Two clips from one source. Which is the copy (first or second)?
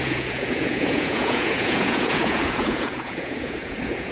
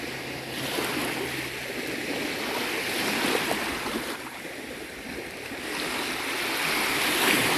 first